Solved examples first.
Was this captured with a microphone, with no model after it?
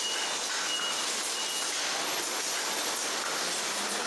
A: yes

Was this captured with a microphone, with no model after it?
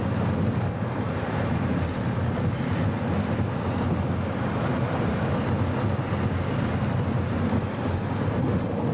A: yes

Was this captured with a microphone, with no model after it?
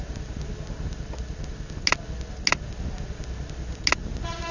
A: yes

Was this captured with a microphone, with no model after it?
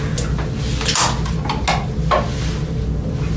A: yes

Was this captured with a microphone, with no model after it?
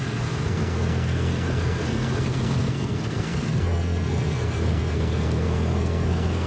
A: no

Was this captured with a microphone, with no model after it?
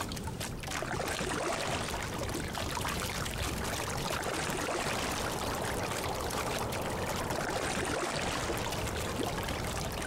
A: yes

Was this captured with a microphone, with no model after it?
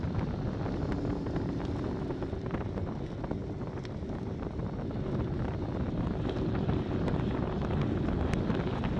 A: yes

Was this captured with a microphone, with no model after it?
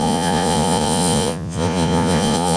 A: no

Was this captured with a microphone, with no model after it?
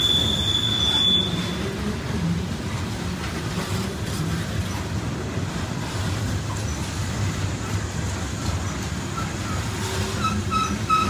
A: yes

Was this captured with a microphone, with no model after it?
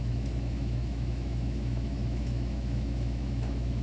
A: no